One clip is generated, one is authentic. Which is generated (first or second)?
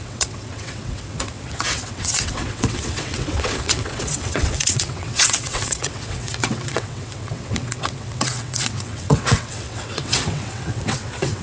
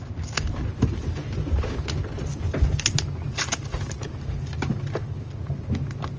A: first